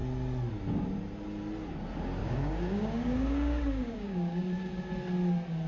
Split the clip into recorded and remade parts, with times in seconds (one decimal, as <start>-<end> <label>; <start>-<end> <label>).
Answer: 0.0-2.2 recorded; 2.2-4.9 remade; 4.9-5.7 recorded